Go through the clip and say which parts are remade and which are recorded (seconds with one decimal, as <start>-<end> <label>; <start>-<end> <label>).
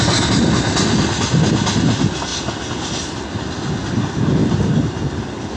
0.0-5.6 recorded